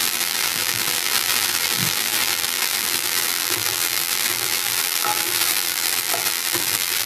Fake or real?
fake